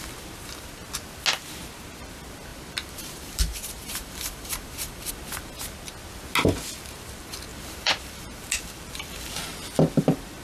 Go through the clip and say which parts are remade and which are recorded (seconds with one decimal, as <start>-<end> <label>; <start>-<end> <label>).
0.0-2.5 recorded; 2.5-5.1 remade; 5.1-7.5 recorded; 7.5-8.5 remade; 8.5-10.4 recorded